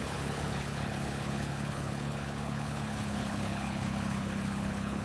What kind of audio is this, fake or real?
fake